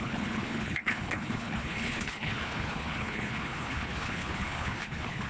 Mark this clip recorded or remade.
remade